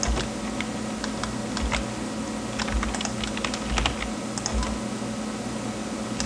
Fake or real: real